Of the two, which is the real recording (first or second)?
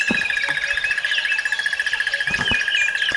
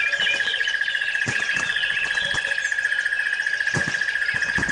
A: first